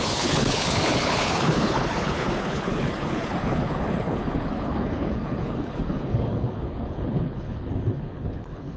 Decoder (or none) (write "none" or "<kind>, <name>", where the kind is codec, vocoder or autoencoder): codec, HILCodec